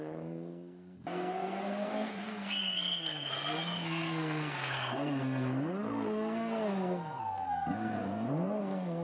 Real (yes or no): no